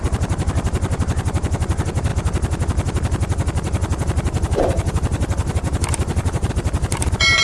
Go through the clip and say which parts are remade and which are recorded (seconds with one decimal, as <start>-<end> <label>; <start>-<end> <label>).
0.0-7.4 recorded

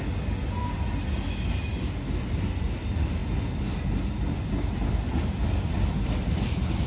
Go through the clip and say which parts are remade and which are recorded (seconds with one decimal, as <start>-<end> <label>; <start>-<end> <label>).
0.0-6.9 recorded